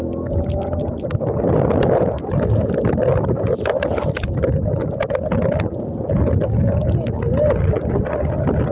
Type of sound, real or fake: real